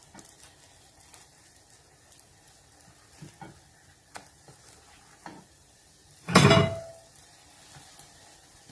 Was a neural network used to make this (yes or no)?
no